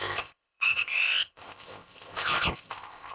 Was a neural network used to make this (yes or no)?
yes